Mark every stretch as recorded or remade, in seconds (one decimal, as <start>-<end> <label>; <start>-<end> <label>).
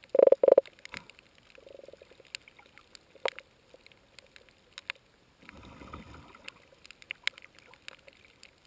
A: 0.0-8.7 recorded